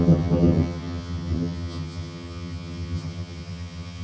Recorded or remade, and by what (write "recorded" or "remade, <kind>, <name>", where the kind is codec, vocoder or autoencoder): remade, vocoder, HiFi-GAN